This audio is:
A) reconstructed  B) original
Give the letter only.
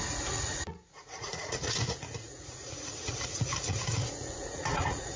A